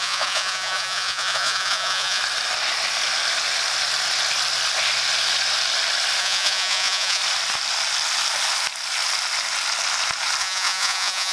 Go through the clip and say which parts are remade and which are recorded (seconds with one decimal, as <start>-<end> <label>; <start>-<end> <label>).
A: 0.0-2.2 remade; 2.2-6.2 recorded; 6.2-7.2 remade; 7.2-10.4 recorded; 10.4-11.3 remade